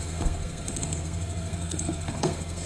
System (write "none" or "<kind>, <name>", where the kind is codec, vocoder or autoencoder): codec, SNAC